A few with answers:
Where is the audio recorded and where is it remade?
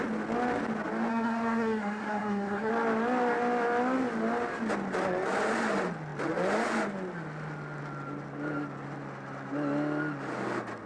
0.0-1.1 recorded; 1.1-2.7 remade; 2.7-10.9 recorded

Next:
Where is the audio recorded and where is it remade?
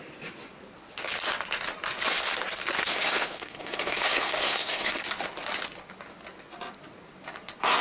0.0-2.9 recorded; 2.9-5.0 remade; 5.0-7.8 recorded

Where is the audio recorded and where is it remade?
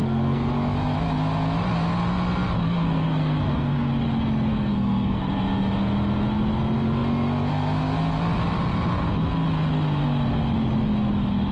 0.0-0.5 remade; 0.5-2.6 recorded; 2.6-3.9 remade; 3.9-4.5 recorded; 4.5-5.2 remade; 5.2-11.5 recorded